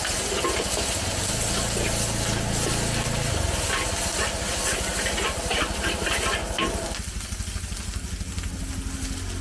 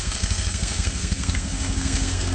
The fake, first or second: second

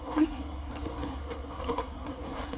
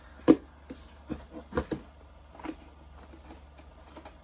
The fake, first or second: first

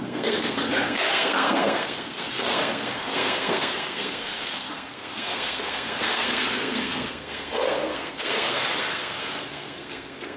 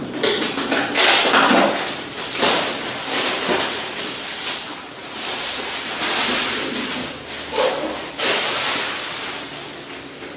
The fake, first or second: first